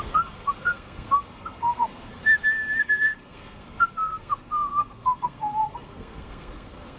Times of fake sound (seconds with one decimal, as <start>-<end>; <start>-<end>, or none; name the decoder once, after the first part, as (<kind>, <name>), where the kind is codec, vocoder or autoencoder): 0.0-2.2 (codec, SNAC); 2.8-7.0